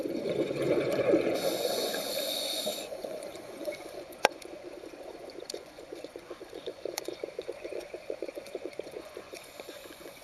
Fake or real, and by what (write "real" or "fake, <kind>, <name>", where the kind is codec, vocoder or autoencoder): fake, vocoder, Vocos